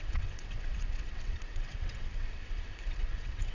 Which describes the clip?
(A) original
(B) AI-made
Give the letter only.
B